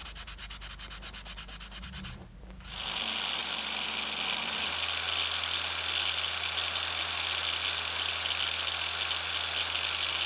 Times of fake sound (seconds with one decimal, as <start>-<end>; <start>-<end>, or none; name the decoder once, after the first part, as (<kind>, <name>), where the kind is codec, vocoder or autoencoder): none